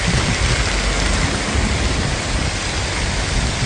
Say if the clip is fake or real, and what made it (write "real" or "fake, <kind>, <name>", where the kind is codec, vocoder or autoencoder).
real